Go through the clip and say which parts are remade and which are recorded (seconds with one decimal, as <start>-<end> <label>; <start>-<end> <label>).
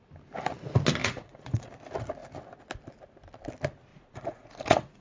0.0-1.0 recorded; 1.0-1.7 remade; 1.7-3.9 recorded; 3.9-5.0 remade